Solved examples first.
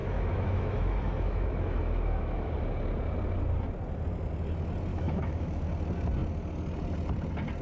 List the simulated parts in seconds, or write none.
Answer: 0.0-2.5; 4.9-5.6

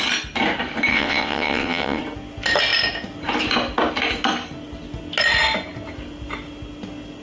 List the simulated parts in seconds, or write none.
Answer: 0.9-2.0